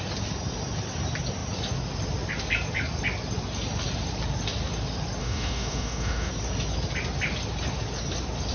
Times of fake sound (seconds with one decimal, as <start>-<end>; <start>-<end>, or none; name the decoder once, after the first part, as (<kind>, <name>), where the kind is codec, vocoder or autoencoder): 5.2-6.3 (autoencoder, DAC-VAE)